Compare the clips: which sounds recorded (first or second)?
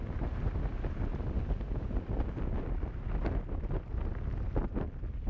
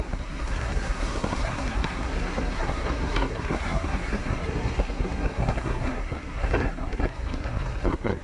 first